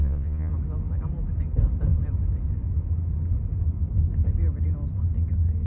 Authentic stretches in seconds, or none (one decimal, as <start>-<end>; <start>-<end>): 0.5-5.7